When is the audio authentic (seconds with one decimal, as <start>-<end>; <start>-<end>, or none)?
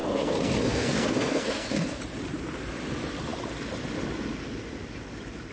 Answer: 2.0-5.5